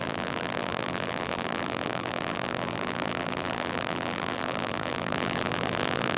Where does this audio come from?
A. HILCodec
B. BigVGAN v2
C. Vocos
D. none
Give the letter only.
B